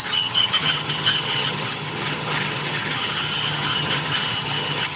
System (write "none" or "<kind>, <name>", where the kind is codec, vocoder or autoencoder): vocoder, HiFi-GAN